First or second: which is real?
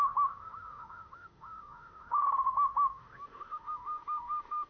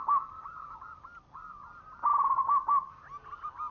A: second